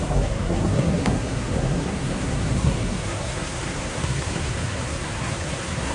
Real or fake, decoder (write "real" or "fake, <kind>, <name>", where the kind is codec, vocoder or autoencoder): fake, codec, SNAC